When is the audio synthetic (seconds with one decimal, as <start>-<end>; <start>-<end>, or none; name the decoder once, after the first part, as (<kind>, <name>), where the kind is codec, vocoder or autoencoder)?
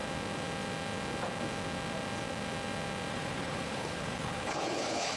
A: 3.1-5.2 (codec, HILCodec)